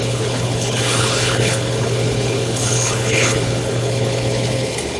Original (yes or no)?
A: no